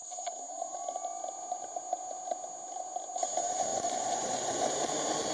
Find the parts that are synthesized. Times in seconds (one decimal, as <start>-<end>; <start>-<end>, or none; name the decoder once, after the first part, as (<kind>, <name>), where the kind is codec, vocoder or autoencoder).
3.7-4.7 (vocoder, Vocos)